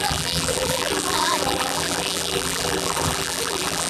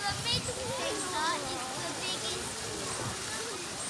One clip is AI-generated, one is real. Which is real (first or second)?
second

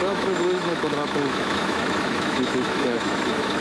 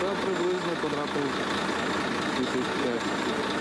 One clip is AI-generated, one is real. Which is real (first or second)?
second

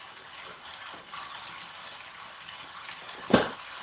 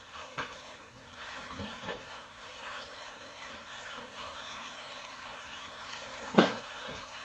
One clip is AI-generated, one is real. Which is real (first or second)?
first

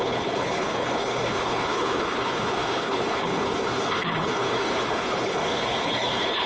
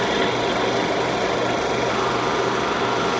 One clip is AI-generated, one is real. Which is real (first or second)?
second